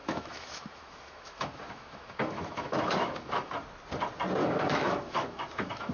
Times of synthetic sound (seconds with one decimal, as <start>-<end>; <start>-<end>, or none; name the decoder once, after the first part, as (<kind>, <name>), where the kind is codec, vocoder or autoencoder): 0.0-3.5 (autoencoder, DAC-VAE); 4.4-5.9